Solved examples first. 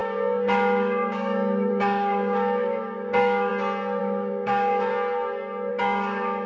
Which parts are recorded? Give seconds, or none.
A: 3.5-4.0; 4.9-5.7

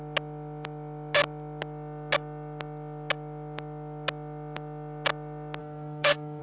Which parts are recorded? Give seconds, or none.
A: 0.0-5.6

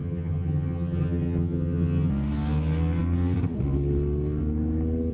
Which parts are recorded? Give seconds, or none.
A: 2.1-5.1

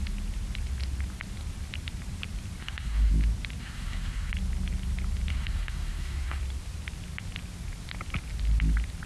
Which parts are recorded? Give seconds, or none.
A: 0.0-2.6; 3.1-3.6; 4.3-5.3; 6.4-9.1

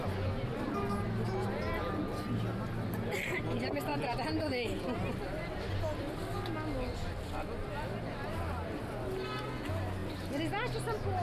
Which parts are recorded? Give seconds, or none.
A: 0.0-11.2

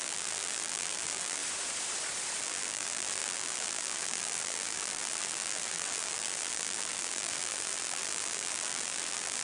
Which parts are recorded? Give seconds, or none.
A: 1.4-2.4

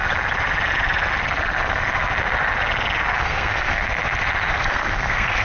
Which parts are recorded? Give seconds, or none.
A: 0.0-3.2; 3.8-4.5